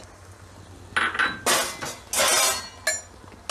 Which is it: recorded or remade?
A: recorded